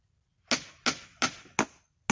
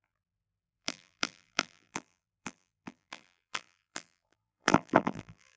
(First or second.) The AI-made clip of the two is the second